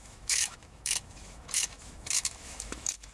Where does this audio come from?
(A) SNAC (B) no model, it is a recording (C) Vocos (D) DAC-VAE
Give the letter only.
D